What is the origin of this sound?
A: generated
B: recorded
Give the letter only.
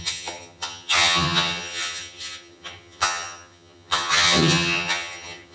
A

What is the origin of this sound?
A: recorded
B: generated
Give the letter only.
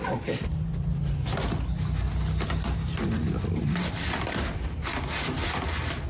A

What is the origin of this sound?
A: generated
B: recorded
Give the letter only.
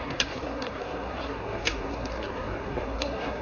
A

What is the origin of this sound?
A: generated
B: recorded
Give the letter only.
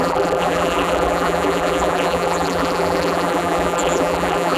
A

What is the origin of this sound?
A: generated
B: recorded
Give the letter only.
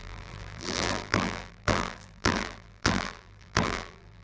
A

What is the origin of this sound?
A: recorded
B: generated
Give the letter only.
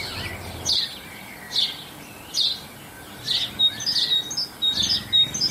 A